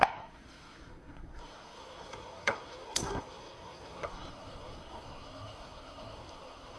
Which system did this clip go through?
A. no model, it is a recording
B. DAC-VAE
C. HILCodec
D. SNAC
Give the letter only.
D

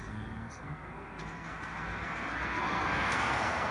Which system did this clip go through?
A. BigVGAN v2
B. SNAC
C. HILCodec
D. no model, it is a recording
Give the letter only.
B